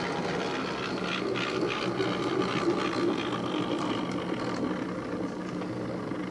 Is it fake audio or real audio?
real